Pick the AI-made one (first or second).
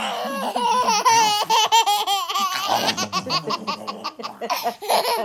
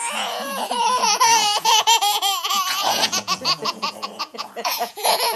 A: second